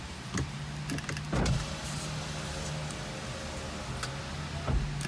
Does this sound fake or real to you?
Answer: real